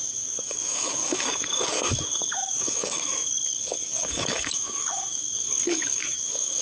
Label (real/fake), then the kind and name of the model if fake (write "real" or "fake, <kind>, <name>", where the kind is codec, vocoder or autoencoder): fake, codec, DAC